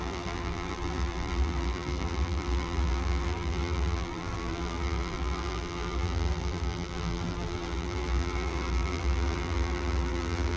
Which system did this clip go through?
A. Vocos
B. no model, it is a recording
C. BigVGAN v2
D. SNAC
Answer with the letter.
C